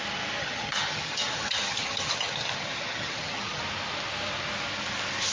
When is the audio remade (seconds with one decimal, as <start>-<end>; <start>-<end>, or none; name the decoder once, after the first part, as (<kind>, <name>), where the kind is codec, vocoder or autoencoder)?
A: 0.4-3.6 (vocoder, HiFi-GAN)